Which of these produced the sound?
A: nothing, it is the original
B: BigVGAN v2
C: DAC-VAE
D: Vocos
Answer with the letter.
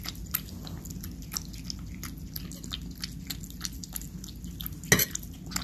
A